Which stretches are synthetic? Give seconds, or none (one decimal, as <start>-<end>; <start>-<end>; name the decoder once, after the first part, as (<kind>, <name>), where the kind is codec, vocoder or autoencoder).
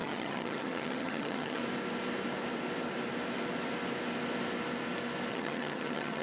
0.0-1.6 (vocoder, HiFi-GAN); 5.3-6.2